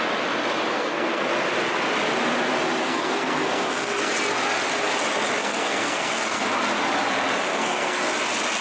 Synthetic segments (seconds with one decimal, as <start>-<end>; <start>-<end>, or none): 0.7-1.3; 2.8-4.1; 5.4-6.4; 7.5-8.0